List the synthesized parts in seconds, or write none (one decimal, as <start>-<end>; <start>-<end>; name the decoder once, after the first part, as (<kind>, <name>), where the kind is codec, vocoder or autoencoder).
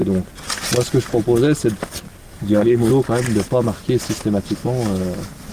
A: 2.2-2.9 (codec, SNAC)